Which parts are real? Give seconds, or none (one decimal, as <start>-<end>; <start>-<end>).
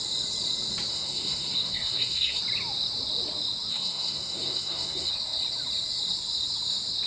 0.0-0.9; 2.4-3.7; 5.1-7.1